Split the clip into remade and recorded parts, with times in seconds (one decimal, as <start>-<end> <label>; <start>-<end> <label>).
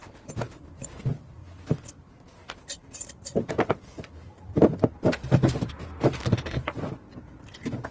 0.0-1.4 remade; 1.4-2.0 recorded; 2.0-7.9 remade